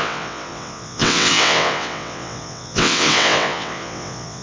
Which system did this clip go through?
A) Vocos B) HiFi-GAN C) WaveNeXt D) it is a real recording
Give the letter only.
C